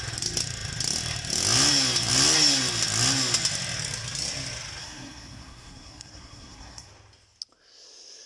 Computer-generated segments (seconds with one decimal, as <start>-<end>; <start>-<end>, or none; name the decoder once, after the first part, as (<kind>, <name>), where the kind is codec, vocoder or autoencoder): 4.8-6.9 (codec, SNAC)